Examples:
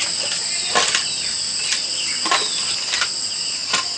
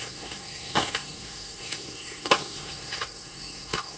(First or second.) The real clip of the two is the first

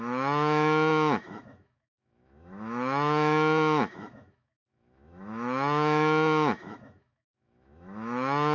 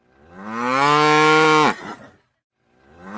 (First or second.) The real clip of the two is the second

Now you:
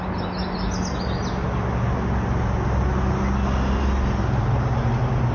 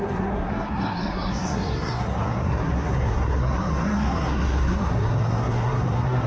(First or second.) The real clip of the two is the first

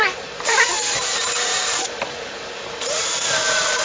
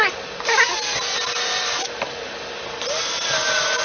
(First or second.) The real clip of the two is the second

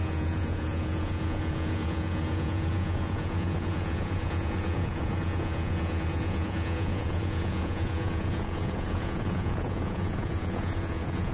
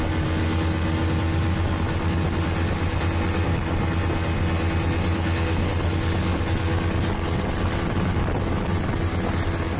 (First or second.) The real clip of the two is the second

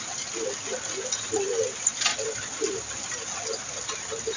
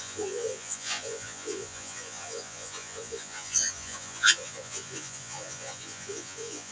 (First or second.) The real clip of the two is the first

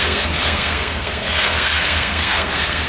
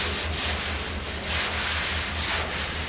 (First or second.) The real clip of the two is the second